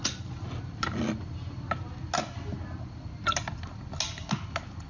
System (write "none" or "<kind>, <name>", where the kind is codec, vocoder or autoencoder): none